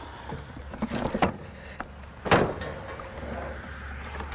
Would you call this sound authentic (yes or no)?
yes